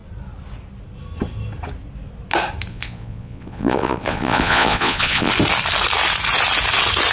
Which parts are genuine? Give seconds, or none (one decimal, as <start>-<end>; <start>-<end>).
0.0-2.7; 5.3-7.1